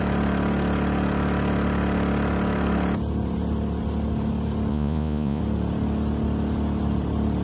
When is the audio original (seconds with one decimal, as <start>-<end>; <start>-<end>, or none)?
0.0-4.7; 5.4-7.4

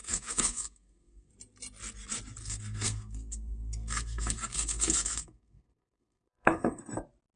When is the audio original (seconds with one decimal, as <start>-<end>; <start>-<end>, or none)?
1.3-2.4; 6.8-7.4

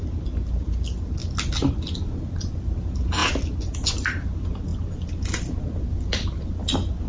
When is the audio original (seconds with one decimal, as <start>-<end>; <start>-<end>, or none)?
0.0-7.1

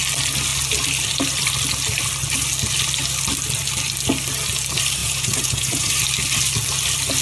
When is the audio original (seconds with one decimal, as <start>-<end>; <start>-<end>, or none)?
0.0-5.0; 5.9-7.2

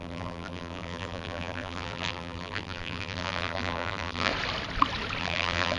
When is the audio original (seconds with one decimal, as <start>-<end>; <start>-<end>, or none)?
4.3-5.2

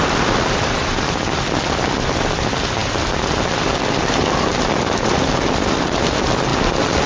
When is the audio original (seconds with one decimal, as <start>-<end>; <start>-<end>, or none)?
0.0-2.8; 5.0-6.5

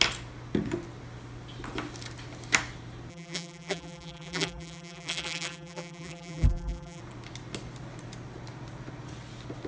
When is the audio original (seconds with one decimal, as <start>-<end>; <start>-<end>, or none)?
0.0-3.1; 7.0-9.7

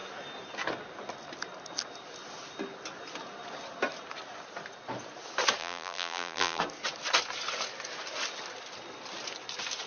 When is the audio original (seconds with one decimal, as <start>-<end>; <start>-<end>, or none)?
0.0-5.6; 6.6-9.9